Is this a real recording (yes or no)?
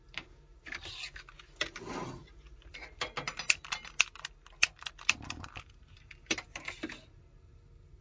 yes